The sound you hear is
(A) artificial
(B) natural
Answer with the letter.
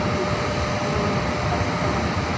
B